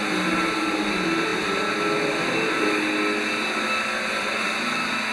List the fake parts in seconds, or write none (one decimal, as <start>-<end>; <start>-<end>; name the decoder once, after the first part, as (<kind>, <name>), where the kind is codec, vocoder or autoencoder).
none